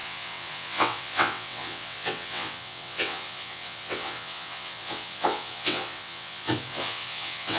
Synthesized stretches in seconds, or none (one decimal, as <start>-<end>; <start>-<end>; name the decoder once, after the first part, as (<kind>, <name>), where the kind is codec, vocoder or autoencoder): 0.0-7.6 (vocoder, WaveNeXt)